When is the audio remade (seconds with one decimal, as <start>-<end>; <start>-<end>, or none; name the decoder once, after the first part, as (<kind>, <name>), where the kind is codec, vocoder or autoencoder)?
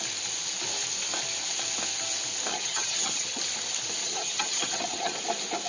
2.5-3.4 (vocoder, HiFi-GAN); 4.0-5.2